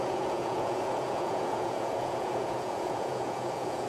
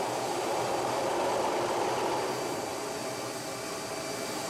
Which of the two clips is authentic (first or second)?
second